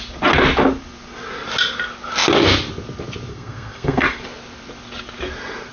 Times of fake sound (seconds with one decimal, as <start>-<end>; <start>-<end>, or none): 3.3-4.2